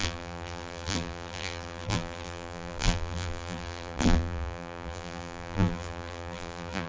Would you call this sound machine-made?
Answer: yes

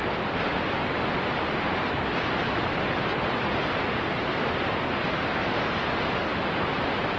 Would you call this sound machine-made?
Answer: no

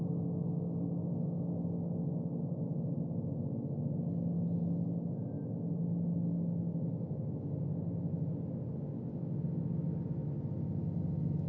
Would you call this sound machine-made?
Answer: no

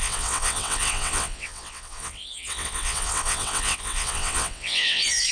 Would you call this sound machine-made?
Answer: yes